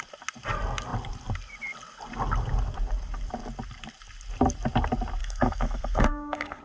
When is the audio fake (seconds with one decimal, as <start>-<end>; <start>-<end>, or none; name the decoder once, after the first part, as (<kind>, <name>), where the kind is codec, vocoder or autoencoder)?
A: 5.2-6.6 (codec, SNAC)